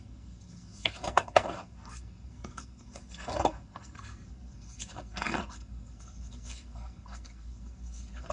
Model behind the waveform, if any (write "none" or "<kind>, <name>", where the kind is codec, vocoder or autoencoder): codec, SNAC